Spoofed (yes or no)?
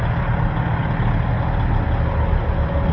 no